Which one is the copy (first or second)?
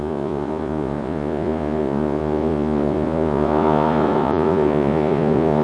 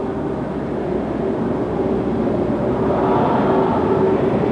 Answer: first